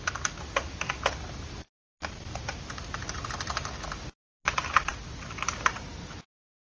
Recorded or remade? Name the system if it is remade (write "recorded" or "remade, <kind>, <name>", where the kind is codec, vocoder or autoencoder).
recorded